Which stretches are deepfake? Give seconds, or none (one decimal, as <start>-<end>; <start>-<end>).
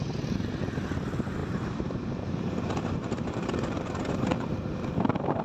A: 1.4-4.6